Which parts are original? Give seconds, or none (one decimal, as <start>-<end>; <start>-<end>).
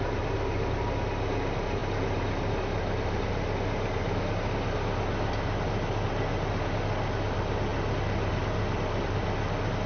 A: 0.0-9.9